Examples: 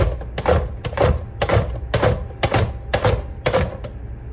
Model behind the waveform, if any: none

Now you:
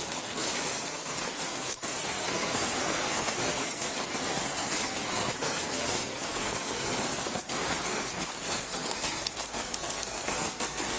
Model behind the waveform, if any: codec, SNAC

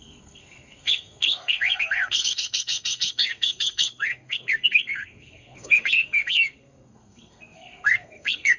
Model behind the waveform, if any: codec, SNAC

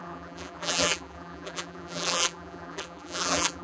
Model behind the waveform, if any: vocoder, BigVGAN v2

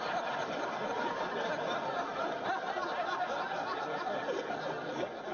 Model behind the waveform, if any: none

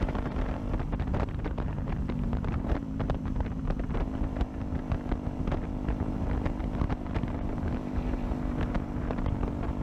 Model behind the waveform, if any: vocoder, BigVGAN v2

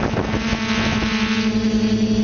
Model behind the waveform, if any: none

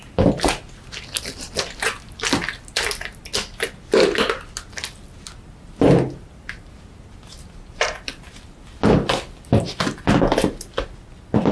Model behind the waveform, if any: none